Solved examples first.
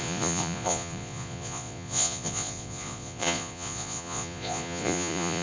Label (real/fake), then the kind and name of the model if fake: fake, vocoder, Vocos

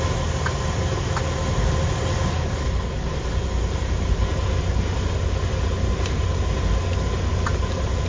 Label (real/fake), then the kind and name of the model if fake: real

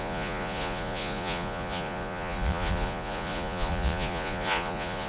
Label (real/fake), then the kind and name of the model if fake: fake, vocoder, Vocos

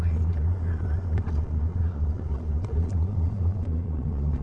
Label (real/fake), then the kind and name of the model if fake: fake, vocoder, Vocos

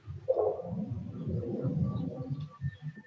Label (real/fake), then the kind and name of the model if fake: real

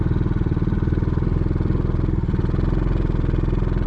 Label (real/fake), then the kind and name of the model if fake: real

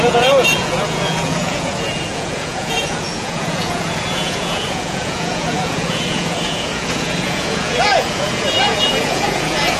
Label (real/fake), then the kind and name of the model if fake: fake, vocoder, Vocos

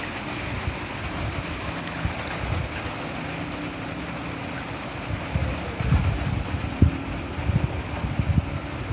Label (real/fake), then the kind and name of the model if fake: real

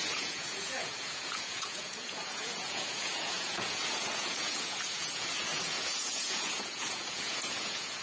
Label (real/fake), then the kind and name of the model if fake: fake, vocoder, Vocos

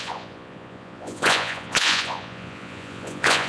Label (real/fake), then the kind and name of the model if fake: fake, vocoder, Vocos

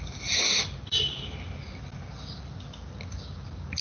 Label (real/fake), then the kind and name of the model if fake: real